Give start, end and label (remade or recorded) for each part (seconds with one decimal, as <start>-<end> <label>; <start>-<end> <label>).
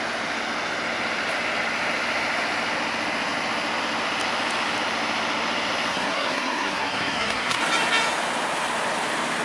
0.0-5.9 recorded; 5.9-7.6 remade; 7.6-9.4 recorded